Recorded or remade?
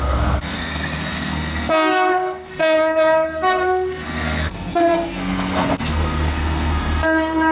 remade